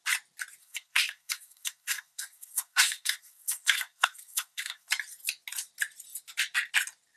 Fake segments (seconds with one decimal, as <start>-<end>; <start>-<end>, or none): 0.6-4.9

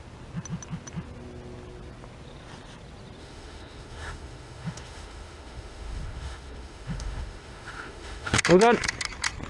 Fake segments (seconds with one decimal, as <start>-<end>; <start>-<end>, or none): 3.2-8.4

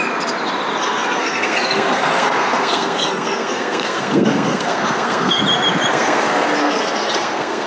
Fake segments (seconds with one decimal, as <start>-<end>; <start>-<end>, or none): 0.8-5.4; 5.9-7.7

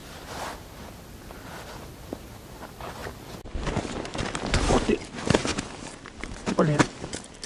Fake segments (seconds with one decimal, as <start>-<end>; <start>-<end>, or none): none

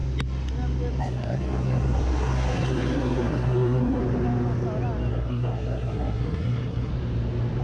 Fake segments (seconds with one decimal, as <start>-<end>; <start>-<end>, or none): 1.0-4.0; 5.1-6.9

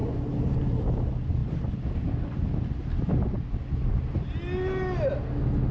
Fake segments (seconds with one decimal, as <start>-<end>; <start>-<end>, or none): 0.0-0.8

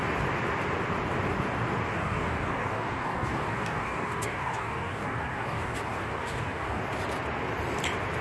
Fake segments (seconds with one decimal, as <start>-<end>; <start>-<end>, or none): 1.9-6.8

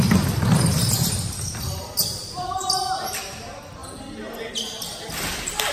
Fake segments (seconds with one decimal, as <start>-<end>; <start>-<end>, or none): none